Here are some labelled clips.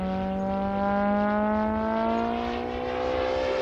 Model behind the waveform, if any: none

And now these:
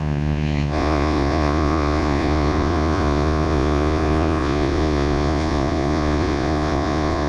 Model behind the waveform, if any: vocoder, Vocos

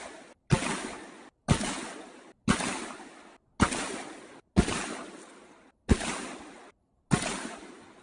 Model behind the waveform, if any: none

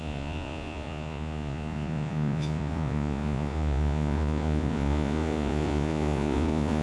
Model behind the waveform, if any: vocoder, Vocos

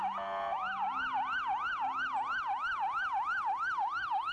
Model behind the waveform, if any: none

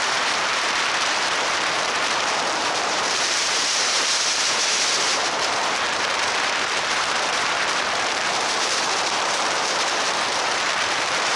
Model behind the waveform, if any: vocoder, BigVGAN v2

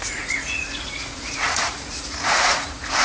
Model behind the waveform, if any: vocoder, Vocos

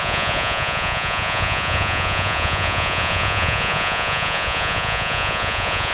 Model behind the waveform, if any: vocoder, Vocos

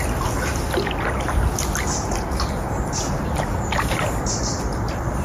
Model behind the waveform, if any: none